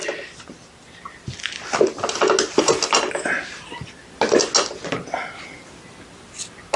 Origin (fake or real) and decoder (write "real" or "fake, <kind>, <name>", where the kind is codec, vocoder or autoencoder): real